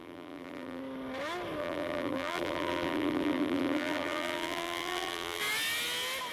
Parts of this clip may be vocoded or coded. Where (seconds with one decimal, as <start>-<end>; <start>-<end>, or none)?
0.0-0.8; 1.6-5.4